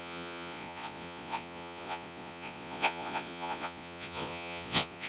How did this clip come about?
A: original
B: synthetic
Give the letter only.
B